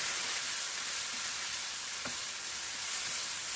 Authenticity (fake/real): real